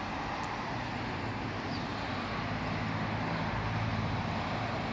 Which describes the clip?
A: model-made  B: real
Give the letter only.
B